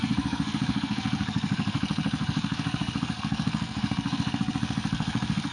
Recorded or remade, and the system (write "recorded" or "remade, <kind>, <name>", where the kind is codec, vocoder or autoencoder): remade, codec, SNAC